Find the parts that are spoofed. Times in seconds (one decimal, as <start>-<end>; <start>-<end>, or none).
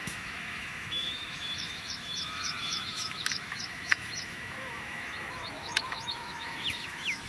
0.0-7.3